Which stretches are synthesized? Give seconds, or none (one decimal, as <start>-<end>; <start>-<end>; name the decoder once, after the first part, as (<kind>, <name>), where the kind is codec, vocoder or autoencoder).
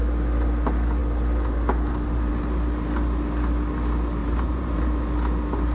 4.2-5.0 (vocoder, BigVGAN v2)